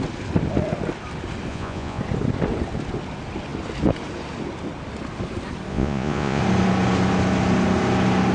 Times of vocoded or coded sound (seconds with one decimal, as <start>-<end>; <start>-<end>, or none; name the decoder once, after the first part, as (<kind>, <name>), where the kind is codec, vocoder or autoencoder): 1.5-2.0 (vocoder, Vocos); 5.7-6.4